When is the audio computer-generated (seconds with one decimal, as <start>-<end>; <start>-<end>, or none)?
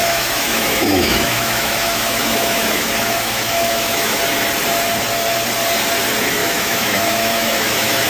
0.0-4.2; 6.4-8.1